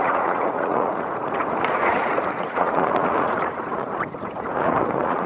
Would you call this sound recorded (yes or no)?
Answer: no